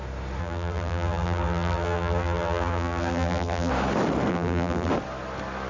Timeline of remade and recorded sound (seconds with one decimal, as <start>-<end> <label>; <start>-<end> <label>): 0.0-0.4 recorded; 0.4-3.7 remade; 3.7-4.3 recorded; 4.3-4.9 remade; 4.9-5.7 recorded